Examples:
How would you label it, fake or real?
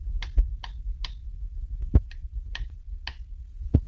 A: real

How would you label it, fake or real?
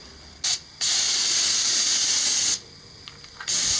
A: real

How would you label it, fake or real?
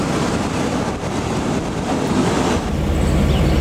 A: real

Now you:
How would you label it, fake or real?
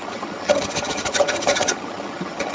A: fake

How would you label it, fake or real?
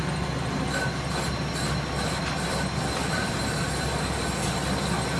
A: real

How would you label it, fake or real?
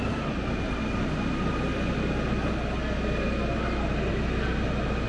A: real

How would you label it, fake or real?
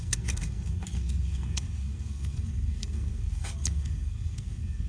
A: fake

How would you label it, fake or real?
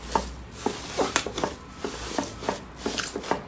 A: real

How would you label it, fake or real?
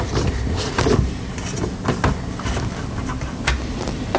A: real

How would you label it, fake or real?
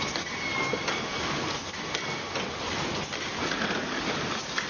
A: real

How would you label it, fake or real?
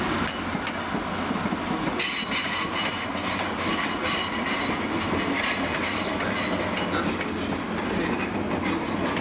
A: real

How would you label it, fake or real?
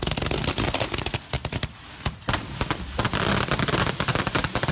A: real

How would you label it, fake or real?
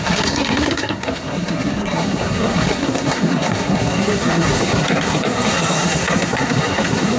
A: fake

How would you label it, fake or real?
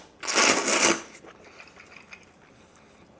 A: real